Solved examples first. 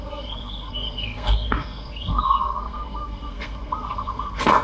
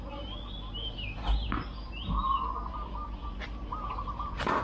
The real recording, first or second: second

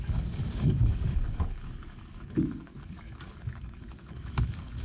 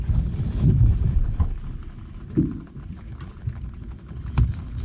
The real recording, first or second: second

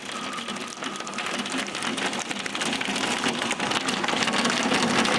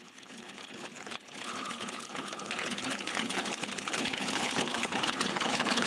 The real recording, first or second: first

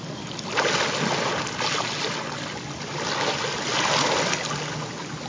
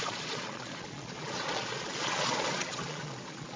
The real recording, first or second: first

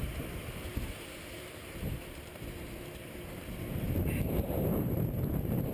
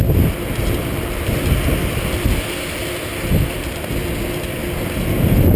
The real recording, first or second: second